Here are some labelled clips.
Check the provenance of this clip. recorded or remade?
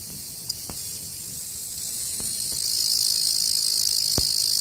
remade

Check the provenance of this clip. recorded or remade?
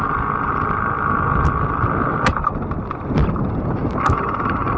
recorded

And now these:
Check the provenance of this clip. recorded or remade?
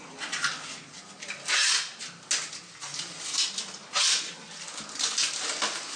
recorded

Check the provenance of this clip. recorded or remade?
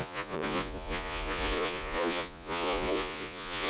remade